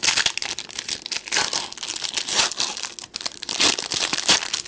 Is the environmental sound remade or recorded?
recorded